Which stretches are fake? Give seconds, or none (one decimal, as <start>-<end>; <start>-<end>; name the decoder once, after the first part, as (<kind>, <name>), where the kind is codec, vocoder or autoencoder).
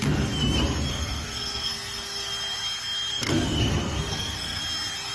0.9-2.3 (codec, SNAC); 3.1-4.6